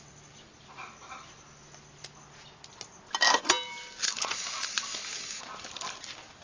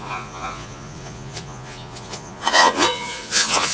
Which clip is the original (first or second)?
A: first